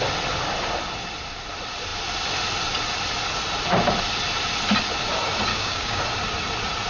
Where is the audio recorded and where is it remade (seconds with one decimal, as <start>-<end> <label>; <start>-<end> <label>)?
0.0-5.5 recorded; 5.5-6.0 remade; 6.0-6.9 recorded